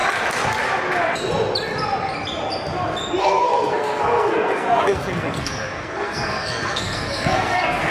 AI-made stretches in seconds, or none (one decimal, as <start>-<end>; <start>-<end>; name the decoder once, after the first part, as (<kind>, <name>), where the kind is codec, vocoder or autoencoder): 3.2-7.9 (codec, SNAC)